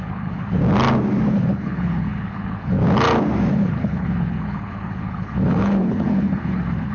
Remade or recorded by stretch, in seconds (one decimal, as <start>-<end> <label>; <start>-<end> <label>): 0.0-0.6 remade; 0.6-1.3 recorded; 1.3-2.8 remade; 2.8-3.5 recorded; 3.5-6.9 remade